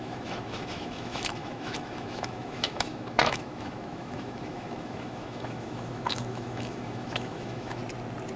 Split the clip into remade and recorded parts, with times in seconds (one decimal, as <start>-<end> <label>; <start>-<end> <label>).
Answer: 0.0-7.8 remade; 7.8-8.4 recorded